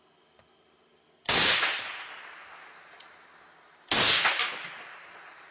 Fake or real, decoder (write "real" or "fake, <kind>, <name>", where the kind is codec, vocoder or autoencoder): real